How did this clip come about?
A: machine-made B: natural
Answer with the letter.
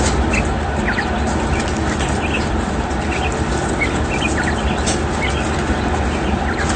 B